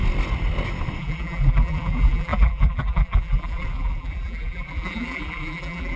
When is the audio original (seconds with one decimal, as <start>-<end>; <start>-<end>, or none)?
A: 0.0-1.0